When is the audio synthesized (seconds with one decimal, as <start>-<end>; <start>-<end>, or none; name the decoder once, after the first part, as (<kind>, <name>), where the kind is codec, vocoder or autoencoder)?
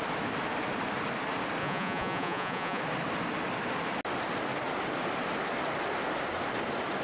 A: 1.6-2.8 (vocoder, Vocos)